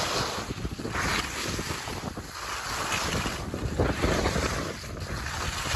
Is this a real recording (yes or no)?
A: yes